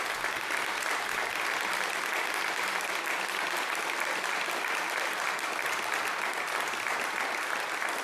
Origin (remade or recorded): remade